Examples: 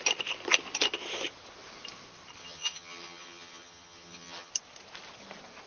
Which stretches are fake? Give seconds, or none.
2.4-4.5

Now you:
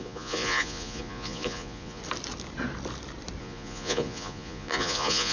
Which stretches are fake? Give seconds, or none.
0.0-2.0; 3.4-5.3

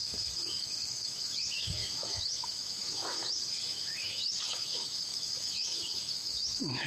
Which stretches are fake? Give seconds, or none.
0.0-6.9

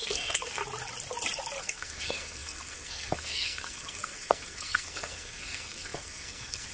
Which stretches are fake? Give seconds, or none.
0.0-0.6; 1.6-6.7

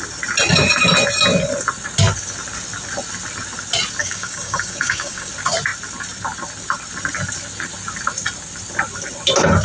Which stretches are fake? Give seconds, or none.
4.0-5.3

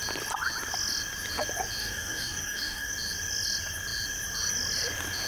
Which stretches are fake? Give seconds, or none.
1.8-2.9

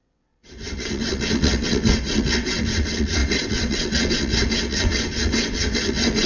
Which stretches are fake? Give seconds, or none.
0.0-6.3

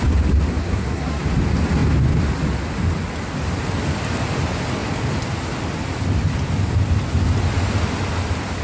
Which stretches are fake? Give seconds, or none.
0.6-1.2